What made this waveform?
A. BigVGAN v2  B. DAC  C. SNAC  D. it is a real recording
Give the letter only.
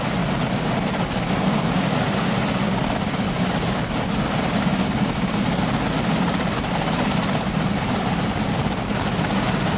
D